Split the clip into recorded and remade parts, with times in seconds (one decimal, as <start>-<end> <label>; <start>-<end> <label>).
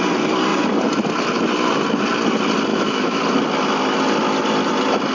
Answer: 0.0-2.7 recorded; 2.7-3.2 remade; 3.2-5.1 recorded